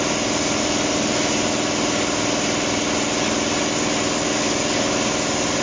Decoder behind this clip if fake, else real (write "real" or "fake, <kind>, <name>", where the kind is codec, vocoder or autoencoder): real